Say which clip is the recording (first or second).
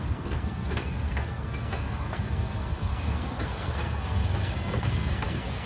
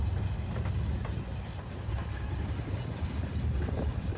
second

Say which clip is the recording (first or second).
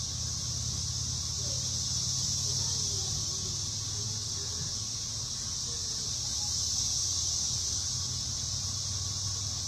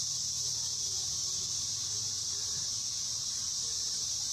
first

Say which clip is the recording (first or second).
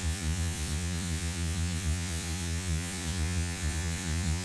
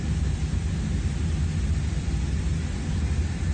second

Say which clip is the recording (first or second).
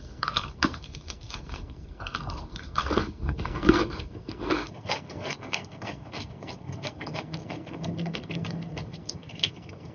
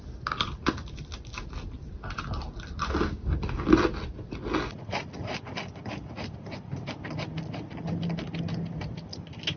second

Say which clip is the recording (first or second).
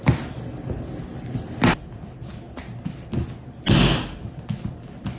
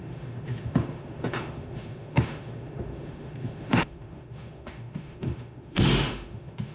first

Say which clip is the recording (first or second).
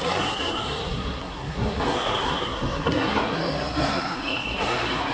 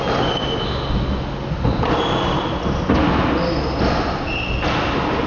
second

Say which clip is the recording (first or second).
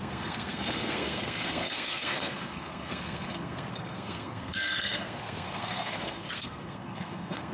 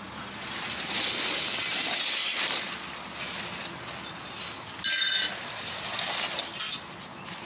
second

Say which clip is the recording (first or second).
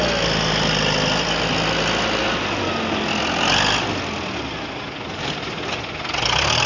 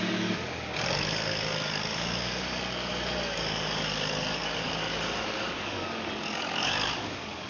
first